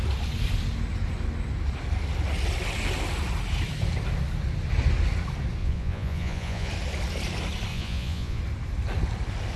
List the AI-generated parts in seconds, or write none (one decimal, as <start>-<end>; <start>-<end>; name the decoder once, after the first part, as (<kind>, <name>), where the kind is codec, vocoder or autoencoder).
5.6-6.7 (vocoder, Vocos); 7.7-8.4